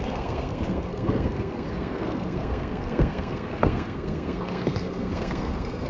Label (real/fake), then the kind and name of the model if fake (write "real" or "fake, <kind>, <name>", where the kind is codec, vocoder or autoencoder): fake, codec, SNAC